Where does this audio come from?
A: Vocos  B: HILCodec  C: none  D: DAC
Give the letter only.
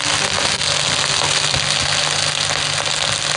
C